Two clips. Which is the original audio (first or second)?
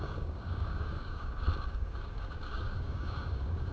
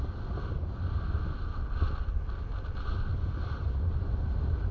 second